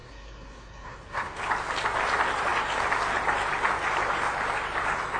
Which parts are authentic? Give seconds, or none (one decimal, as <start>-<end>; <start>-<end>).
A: 1.4-5.2